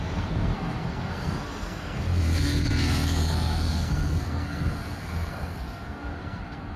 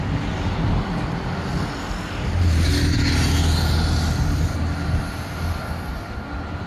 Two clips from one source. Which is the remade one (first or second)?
first